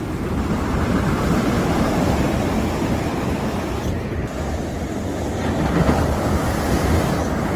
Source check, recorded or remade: recorded